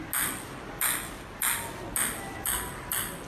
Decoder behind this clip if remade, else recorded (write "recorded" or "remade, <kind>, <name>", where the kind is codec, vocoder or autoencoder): recorded